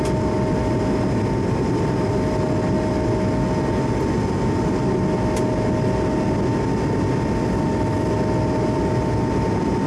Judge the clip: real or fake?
real